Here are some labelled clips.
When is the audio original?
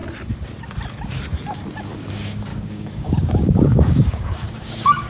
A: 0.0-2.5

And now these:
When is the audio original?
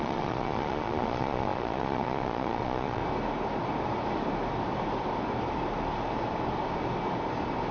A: 3.0-7.7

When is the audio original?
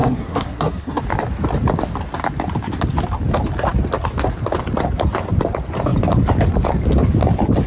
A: 1.0-7.7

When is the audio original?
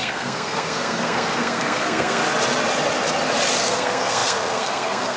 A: 2.2-3.6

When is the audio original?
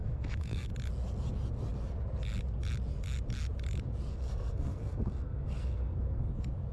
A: 0.7-4.1; 6.3-6.7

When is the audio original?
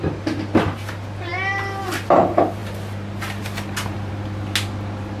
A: 0.0-5.2